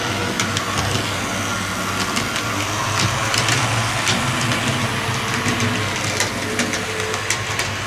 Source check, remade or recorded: recorded